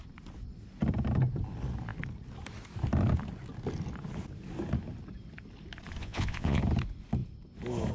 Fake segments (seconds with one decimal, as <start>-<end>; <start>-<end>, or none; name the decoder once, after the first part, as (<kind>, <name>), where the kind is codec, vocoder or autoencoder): 6.0-6.6 (vocoder, Vocos)